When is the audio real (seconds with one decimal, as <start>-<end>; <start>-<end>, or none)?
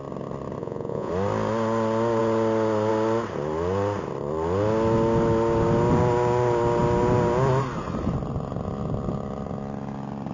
0.0-0.6; 1.1-10.3